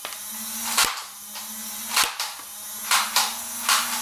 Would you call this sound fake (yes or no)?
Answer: no